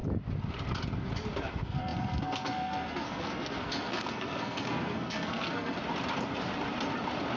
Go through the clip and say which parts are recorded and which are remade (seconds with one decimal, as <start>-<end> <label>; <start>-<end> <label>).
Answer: 0.0-1.5 recorded; 1.5-5.8 remade; 5.8-7.4 recorded